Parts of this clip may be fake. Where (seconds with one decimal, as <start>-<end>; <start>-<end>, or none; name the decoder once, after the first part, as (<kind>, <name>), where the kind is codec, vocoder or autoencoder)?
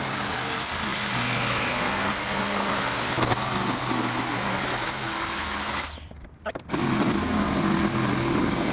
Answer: none